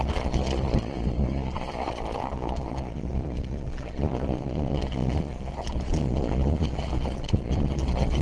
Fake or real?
fake